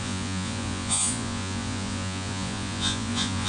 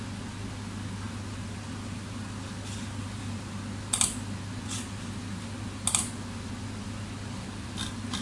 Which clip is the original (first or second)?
second